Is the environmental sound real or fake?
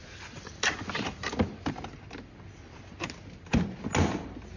real